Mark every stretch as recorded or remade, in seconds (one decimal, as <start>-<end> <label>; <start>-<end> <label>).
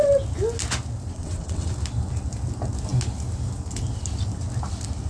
0.0-1.1 recorded; 1.1-1.7 remade; 1.7-5.1 recorded